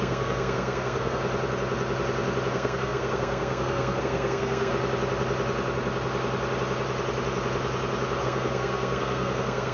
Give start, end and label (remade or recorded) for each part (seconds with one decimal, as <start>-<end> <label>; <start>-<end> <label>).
0.0-1.2 remade; 1.2-2.5 recorded; 2.5-4.7 remade; 4.7-8.2 recorded; 8.2-9.7 remade

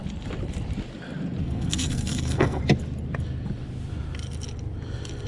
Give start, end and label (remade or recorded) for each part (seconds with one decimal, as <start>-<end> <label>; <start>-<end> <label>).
0.0-1.4 recorded; 1.4-2.6 remade; 2.6-5.3 recorded

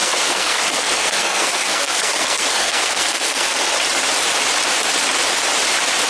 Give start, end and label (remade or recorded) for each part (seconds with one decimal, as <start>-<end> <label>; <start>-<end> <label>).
0.0-3.6 remade; 3.6-6.1 recorded

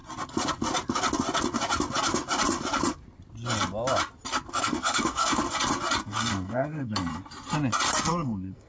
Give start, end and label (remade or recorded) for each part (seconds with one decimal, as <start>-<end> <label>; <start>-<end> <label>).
0.0-4.6 recorded; 4.6-5.3 remade; 5.3-6.0 recorded; 6.0-7.1 remade; 7.1-7.9 recorded; 7.9-8.7 remade

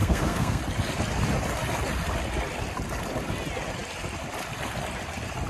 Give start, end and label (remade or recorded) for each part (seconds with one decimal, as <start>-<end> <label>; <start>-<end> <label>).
0.0-0.6 remade; 0.6-5.5 recorded

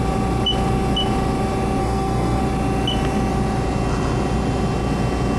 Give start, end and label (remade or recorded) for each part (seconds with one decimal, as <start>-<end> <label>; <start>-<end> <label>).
0.0-1.8 recorded; 1.8-2.4 remade; 2.4-5.4 recorded

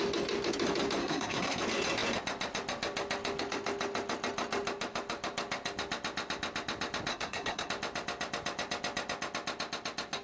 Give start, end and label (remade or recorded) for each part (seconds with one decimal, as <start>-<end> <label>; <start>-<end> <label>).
0.0-1.0 recorded; 1.0-1.6 remade; 1.6-7.1 recorded; 7.1-7.7 remade; 7.7-10.2 recorded

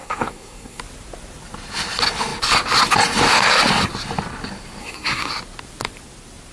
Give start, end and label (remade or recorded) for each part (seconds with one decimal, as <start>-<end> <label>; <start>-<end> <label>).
0.0-0.8 remade; 0.8-4.8 recorded; 4.8-5.3 remade; 5.3-6.5 recorded